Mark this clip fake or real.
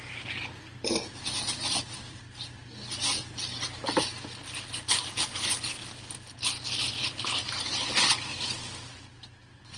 real